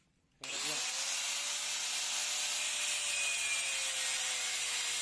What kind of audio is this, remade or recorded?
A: recorded